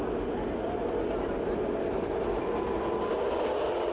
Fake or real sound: real